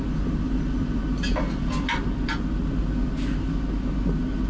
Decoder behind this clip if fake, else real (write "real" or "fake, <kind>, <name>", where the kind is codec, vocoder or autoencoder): real